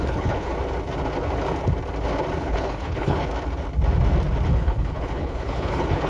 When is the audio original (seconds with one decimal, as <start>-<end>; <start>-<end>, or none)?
0.5-2.4; 3.3-4.5

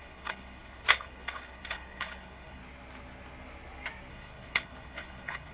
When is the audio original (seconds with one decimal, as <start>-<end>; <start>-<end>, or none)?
2.6-4.1

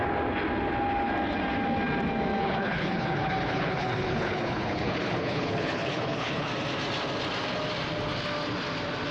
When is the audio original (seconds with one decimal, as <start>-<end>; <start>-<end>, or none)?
0.0-2.4; 6.5-9.1

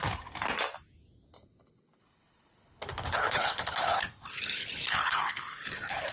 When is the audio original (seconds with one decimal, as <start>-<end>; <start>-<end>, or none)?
0.0-2.0

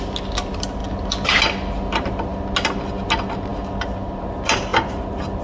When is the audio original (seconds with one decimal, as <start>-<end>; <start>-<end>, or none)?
0.0-5.4